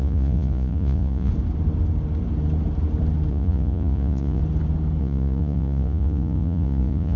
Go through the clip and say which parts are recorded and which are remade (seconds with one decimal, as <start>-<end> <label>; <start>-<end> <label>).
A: 0.0-1.3 remade; 1.3-3.3 recorded; 3.3-4.4 remade; 4.4-5.0 recorded; 5.0-7.2 remade